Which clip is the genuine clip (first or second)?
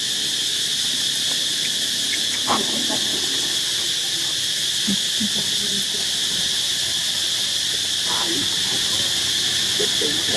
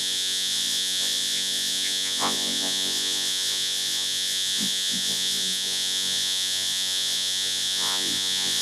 first